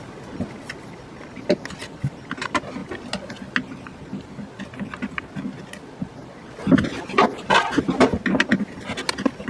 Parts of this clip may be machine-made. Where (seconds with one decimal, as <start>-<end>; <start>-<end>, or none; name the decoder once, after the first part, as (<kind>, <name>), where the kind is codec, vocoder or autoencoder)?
none